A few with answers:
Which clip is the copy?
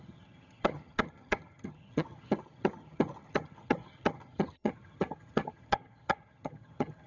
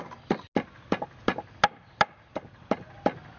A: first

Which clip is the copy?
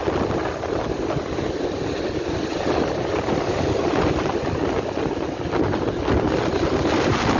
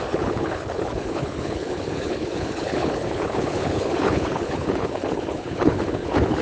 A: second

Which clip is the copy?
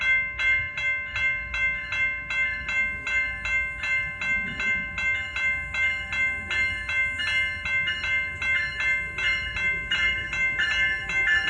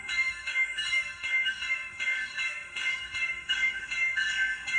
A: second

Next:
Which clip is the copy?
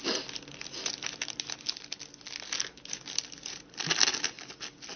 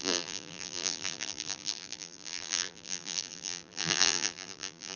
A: second